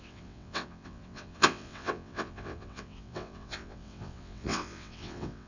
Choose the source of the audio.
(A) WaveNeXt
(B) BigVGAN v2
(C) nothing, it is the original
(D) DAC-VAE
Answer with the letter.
A